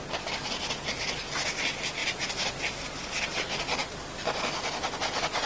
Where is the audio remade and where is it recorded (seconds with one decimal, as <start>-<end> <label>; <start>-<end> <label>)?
0.0-5.5 recorded